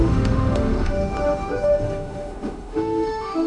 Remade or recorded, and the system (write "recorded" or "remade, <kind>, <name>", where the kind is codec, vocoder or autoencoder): remade, autoencoder, DAC-VAE